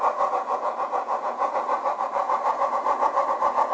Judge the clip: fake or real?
fake